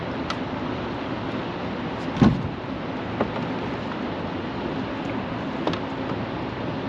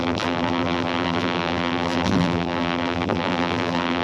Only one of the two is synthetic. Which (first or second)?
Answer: second